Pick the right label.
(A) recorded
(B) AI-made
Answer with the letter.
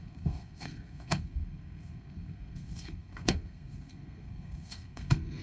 B